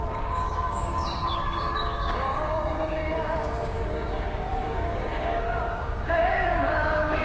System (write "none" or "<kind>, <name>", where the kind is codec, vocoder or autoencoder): codec, DAC